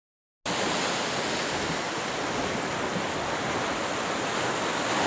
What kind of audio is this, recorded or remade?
recorded